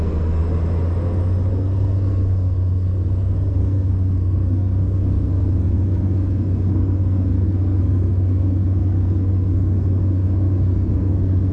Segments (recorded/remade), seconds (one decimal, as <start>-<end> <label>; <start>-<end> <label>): 0.0-0.4 remade; 0.4-1.5 recorded; 1.5-11.5 remade